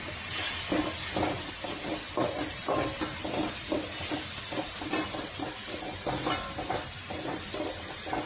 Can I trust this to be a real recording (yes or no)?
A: yes